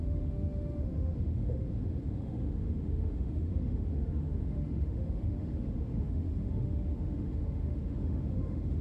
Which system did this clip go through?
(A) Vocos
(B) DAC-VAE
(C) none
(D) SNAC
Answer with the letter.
B